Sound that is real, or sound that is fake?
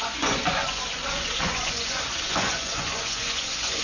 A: fake